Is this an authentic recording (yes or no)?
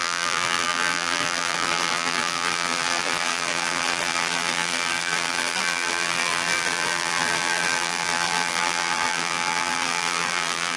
no